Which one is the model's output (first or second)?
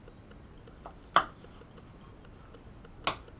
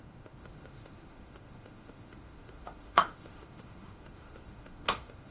second